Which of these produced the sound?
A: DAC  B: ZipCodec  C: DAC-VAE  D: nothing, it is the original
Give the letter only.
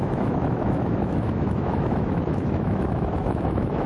C